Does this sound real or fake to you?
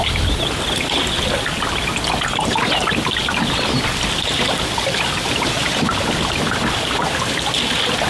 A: fake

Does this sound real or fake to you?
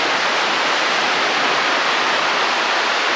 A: fake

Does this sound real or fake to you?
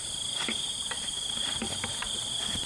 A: fake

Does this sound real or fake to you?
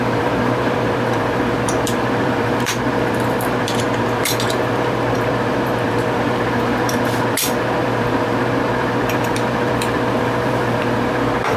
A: fake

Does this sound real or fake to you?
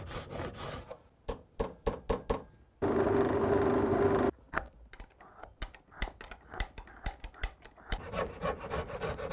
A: real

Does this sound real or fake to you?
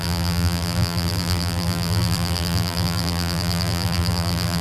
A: fake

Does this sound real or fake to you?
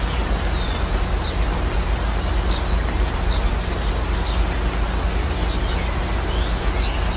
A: real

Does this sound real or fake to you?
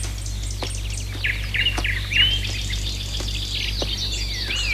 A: real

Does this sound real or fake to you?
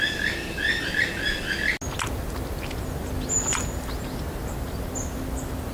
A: real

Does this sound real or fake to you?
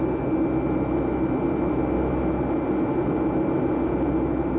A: real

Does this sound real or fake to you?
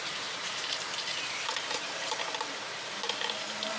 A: fake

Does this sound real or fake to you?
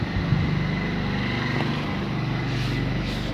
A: real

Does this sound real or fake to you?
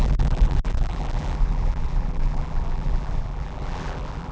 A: fake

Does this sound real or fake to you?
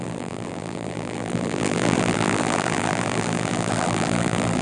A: fake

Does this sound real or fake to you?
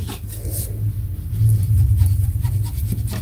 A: real